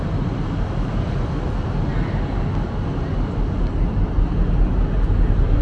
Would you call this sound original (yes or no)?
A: yes